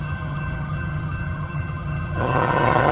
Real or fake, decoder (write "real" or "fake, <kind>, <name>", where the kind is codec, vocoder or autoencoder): fake, vocoder, HiFi-GAN